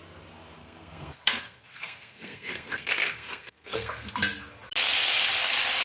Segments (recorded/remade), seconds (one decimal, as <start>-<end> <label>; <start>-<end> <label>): 0.0-0.6 recorded; 0.6-4.1 remade; 4.1-5.8 recorded